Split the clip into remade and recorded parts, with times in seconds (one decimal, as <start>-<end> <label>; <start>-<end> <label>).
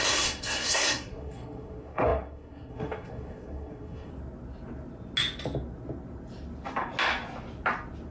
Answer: 0.0-4.1 remade; 4.1-8.1 recorded